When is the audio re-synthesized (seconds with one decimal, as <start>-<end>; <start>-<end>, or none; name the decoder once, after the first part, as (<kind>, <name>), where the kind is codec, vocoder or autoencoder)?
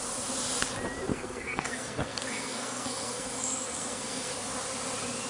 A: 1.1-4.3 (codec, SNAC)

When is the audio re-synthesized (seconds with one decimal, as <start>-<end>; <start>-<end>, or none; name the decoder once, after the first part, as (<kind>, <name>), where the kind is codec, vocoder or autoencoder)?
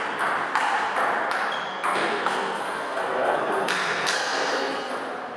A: 1.7-4.9 (codec, SNAC)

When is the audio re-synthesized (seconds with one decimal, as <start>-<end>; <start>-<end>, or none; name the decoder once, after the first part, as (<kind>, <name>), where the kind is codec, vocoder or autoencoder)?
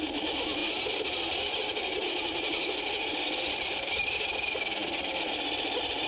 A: 0.0-4.8 (vocoder, BigVGAN v2)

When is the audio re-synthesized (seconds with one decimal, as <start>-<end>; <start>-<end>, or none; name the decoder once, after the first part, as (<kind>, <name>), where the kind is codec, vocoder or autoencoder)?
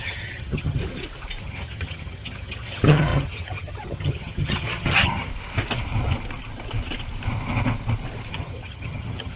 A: 0.0-0.8 (vocoder, HiFi-GAN); 1.4-5.3; 8.3-9.4